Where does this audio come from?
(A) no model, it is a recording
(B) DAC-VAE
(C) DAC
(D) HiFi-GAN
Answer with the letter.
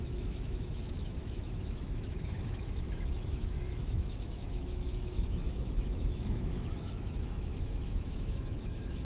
B